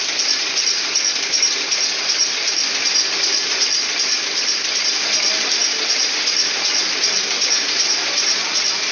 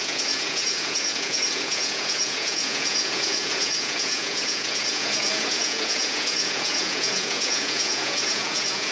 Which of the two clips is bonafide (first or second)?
first